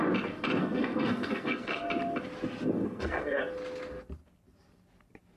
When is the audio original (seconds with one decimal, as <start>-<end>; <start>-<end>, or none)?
0.0-0.6; 1.8-2.8; 3.4-5.4